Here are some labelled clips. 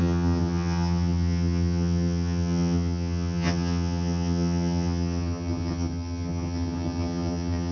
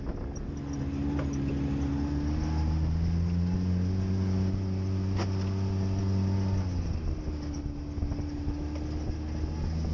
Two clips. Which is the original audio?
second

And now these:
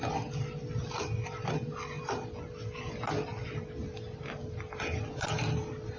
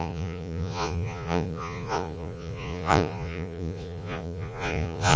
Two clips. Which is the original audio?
first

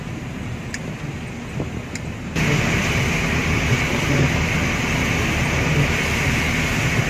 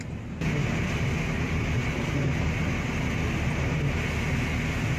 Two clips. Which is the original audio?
second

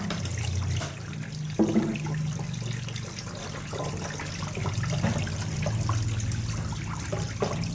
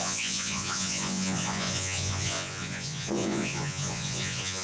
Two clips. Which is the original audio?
first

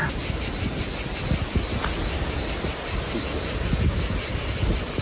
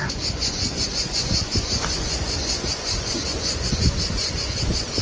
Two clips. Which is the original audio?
first